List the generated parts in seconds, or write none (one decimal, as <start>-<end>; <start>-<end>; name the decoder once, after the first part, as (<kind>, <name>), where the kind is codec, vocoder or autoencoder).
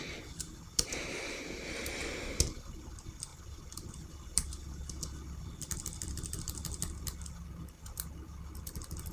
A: 3.3-3.9 (vocoder, BigVGAN v2)